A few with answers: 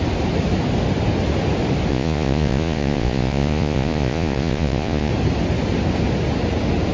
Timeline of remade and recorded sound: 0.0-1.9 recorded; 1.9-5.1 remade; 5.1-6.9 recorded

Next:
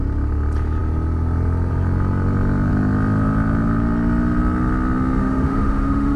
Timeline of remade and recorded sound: 0.0-5.2 recorded; 5.2-6.2 remade

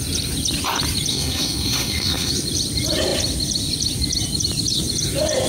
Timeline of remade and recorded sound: 0.0-1.1 recorded; 1.1-2.3 remade; 2.3-5.5 recorded

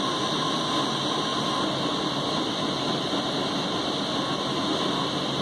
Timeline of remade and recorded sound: 0.0-5.4 recorded